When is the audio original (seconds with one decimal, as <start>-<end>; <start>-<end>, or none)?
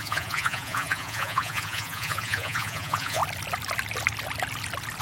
3.2-5.0